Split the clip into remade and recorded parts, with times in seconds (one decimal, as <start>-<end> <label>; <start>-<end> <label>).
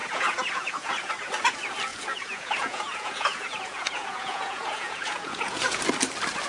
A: 0.0-1.1 remade; 1.1-1.9 recorded; 1.9-5.8 remade; 5.8-6.5 recorded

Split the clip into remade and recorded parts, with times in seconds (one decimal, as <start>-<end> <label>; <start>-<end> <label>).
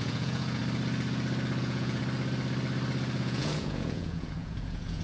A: 0.0-0.6 remade; 0.6-1.6 recorded; 1.6-2.0 remade; 2.0-3.2 recorded; 3.2-5.0 remade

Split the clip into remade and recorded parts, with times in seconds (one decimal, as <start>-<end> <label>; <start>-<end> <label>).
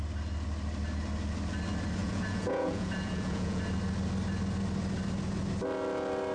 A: 0.0-2.0 recorded; 2.0-3.6 remade; 3.6-6.3 recorded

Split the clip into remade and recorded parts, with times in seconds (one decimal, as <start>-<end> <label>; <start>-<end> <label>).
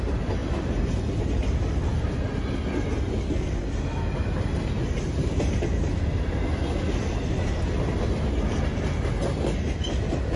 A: 0.0-10.4 recorded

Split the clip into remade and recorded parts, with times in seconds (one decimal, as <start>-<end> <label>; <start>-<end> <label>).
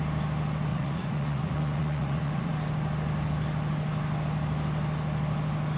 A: 0.0-0.7 recorded; 0.7-2.5 remade; 2.5-5.8 recorded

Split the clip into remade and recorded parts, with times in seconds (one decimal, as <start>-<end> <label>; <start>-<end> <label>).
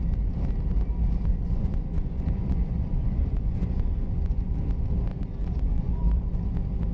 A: 0.0-1.3 recorded; 1.3-4.5 remade; 4.5-5.1 recorded; 5.1-6.3 remade; 6.3-6.9 recorded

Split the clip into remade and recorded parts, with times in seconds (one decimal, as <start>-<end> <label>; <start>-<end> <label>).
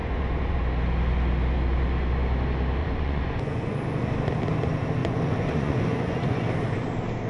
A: 0.0-0.6 remade; 0.6-2.8 recorded; 2.8-3.8 remade; 3.8-5.0 recorded; 5.0-6.4 remade; 6.4-7.3 recorded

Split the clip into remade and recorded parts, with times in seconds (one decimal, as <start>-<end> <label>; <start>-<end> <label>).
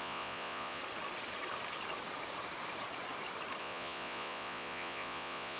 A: 0.0-0.8 remade; 0.8-3.6 recorded; 3.6-5.6 remade